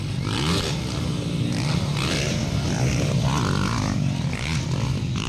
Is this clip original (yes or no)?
yes